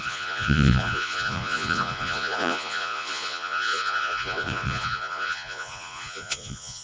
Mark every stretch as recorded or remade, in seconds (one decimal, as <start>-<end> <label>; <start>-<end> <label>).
0.0-6.8 remade